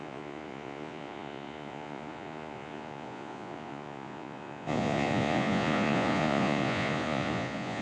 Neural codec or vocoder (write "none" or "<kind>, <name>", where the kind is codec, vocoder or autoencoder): vocoder, Vocos